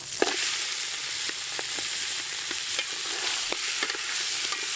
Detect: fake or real real